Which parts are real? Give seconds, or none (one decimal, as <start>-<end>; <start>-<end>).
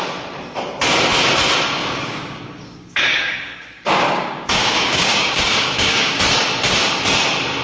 0.0-1.8; 6.2-7.6